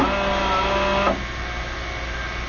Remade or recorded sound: recorded